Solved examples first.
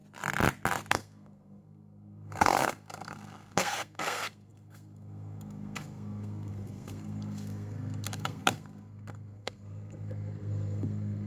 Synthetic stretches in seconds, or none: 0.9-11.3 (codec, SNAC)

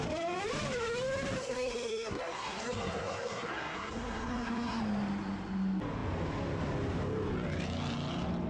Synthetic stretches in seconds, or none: 1.4-4.8 (codec, SNAC)

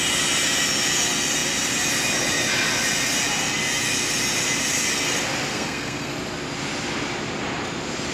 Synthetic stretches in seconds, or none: 5.5-6.1 (codec, SNAC)

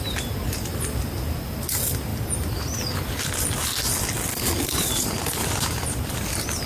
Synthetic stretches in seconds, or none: none

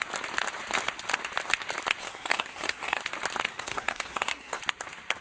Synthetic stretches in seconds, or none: 2.0-3.0 (codec, SNAC); 3.5-4.6

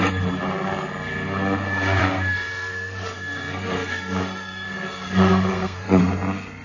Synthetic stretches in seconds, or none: 2.0-6.0 (codec, SNAC)

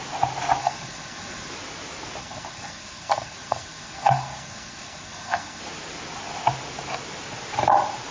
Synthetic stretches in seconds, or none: 0.6-1.5 (codec, SNAC); 2.2-5.6

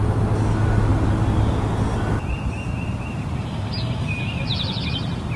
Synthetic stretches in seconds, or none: none